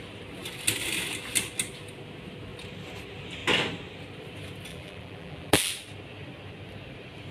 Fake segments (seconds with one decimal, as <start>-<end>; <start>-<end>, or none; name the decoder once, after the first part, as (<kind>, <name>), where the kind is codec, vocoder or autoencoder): 4.7-5.7 (vocoder, BigVGAN v2)